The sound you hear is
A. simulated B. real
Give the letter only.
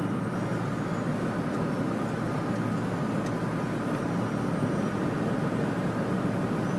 B